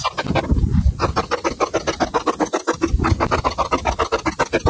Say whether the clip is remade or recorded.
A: recorded